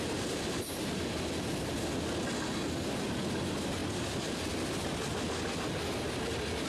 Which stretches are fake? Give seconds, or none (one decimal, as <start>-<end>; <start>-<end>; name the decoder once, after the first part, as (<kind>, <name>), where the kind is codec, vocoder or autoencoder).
none